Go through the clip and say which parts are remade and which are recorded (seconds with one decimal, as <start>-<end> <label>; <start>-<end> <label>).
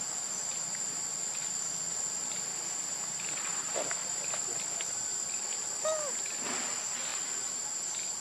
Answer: 0.0-8.2 recorded